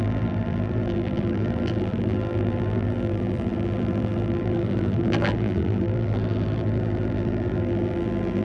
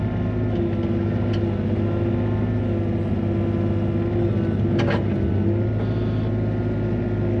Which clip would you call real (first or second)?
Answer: second